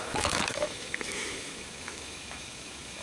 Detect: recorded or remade remade